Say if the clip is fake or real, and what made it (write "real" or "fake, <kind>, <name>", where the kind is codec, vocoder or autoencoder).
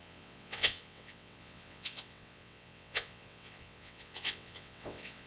fake, vocoder, WaveNeXt